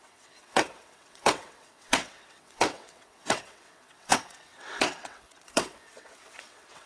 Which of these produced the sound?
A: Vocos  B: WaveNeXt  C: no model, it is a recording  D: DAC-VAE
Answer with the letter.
B